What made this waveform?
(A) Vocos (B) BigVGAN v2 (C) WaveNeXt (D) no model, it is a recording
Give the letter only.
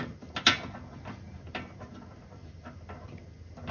D